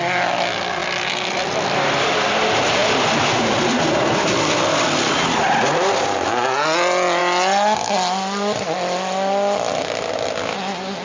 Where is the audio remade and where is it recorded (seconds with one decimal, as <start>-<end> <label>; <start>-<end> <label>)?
0.0-0.8 recorded; 0.8-2.0 remade; 2.0-2.8 recorded; 2.8-4.7 remade; 4.7-11.0 recorded